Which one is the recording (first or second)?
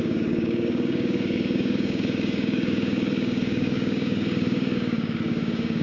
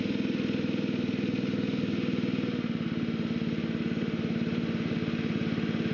second